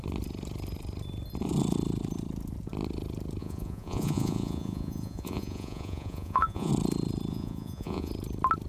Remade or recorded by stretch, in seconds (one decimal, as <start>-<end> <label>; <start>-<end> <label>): 0.0-3.4 recorded; 3.4-6.7 remade; 6.7-7.3 recorded; 7.3-8.1 remade; 8.1-8.7 recorded